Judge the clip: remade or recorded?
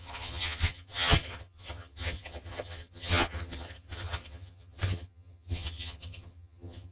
remade